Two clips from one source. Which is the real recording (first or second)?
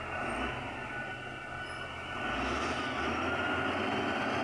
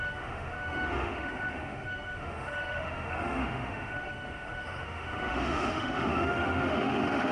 first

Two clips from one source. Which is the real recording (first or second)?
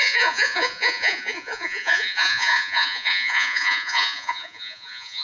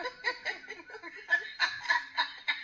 second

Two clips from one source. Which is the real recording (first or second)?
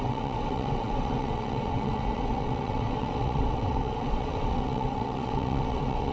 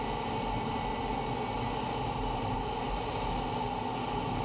second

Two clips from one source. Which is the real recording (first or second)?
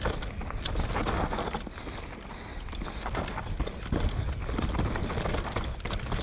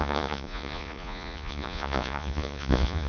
first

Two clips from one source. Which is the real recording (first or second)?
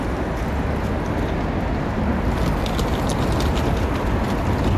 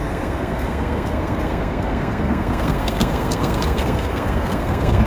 first